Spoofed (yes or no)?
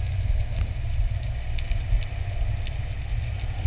no